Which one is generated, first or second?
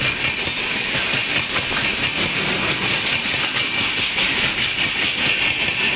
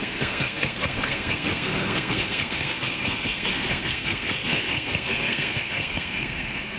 second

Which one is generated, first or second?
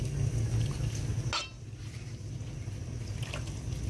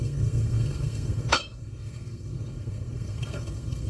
second